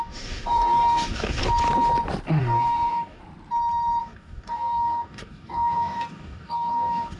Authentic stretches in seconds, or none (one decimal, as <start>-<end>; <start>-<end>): 1.4-2.4; 3.2-4.0